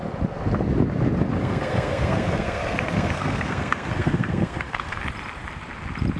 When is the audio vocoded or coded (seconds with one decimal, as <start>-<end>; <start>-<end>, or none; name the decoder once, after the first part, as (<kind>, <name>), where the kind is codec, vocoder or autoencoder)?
1.4-5.0 (codec, SNAC)